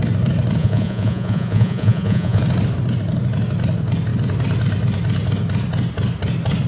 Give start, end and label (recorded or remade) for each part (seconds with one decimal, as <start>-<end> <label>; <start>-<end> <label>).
0.0-0.6 recorded; 0.6-2.4 remade; 2.4-6.7 recorded